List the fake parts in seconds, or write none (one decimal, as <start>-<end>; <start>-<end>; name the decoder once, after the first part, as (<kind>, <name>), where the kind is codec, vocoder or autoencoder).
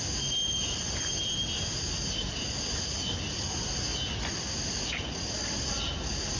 none